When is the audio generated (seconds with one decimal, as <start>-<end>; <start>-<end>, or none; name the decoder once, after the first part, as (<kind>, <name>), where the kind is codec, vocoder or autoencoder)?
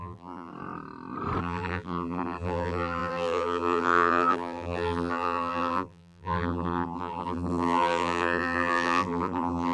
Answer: 0.0-0.5 (vocoder, BigVGAN v2); 1.4-9.7